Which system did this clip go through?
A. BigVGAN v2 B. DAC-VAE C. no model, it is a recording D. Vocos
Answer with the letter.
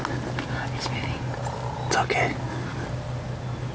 C